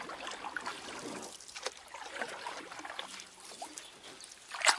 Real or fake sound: real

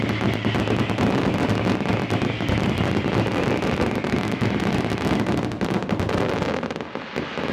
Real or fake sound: real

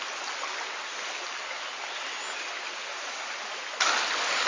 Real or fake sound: real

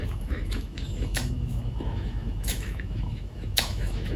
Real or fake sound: fake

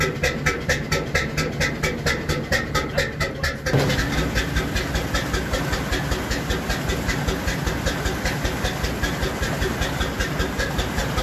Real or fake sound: real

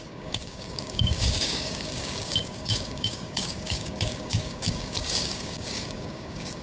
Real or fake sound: fake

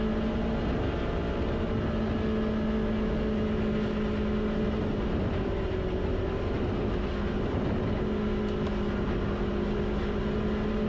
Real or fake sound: real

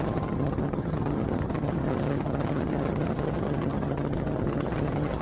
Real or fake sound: fake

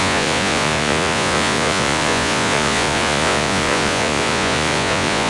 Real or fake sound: fake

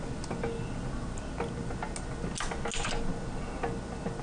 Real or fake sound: real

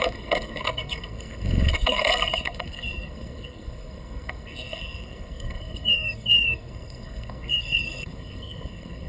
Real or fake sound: fake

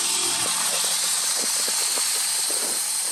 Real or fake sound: real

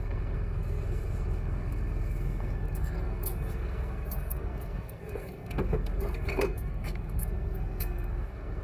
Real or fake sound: fake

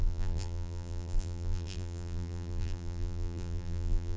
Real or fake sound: fake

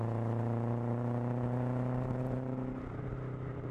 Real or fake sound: fake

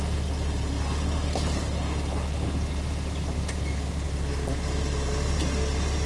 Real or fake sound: real